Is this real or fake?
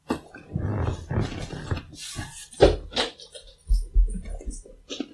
real